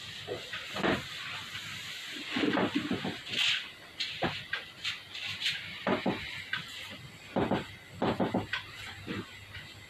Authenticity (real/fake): real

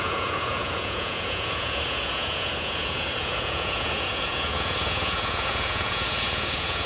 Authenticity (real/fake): fake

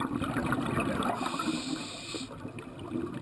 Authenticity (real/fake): real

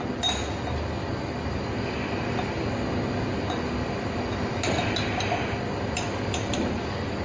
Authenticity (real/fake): real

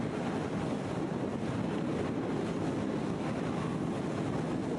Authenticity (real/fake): real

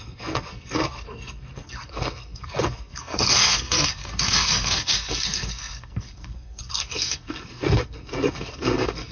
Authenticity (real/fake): fake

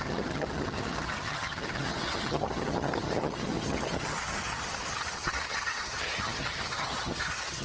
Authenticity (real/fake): fake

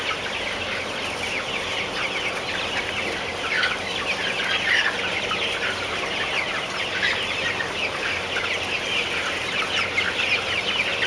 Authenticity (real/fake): real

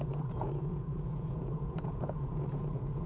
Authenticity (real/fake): fake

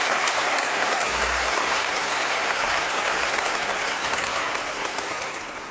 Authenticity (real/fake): fake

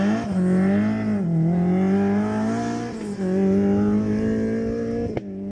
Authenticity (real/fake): real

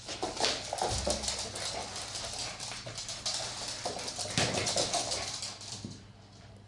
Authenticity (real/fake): real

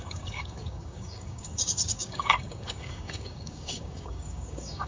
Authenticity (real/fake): fake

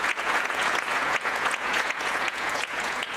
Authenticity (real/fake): fake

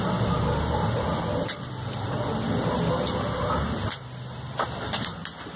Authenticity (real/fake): real